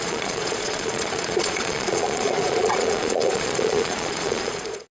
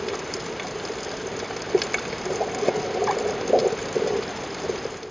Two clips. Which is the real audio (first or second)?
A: second